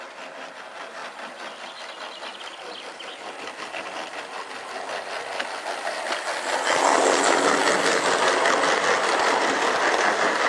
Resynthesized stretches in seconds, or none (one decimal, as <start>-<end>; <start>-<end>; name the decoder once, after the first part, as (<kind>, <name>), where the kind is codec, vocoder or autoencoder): none